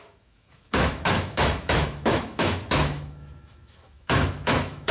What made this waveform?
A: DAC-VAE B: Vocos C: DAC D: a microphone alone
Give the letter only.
A